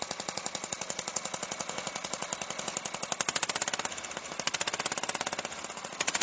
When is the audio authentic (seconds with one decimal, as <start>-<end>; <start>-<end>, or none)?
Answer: 2.3-5.7